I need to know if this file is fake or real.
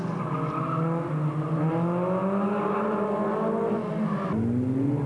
real